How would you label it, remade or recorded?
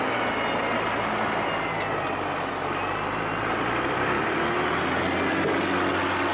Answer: recorded